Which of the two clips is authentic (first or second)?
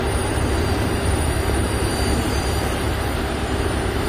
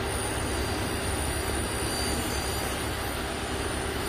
second